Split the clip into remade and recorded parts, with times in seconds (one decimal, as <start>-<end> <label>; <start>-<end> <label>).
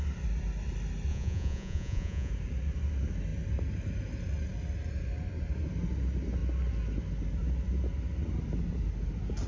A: 0.0-1.1 recorded; 1.1-2.3 remade; 2.3-9.5 recorded